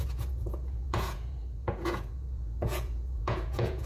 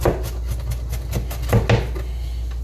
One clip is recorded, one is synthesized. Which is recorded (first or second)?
second